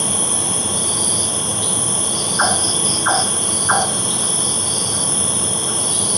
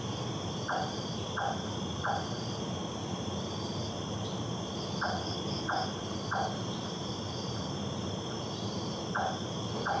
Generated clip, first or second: second